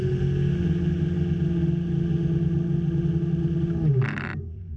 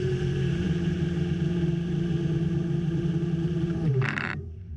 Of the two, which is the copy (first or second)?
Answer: second